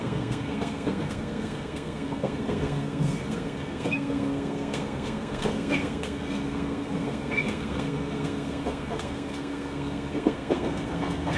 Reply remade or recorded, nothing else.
remade